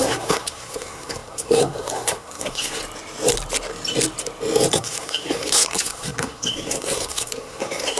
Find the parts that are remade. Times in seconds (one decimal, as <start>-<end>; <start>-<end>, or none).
0.0-2.8; 4.7-8.0